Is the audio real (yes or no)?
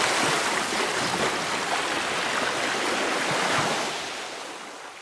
yes